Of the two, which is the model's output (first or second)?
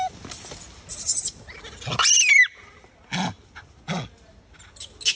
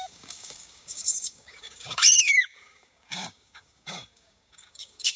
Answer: second